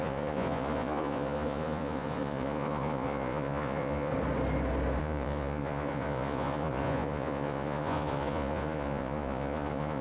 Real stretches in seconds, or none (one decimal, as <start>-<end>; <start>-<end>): 4.1-5.0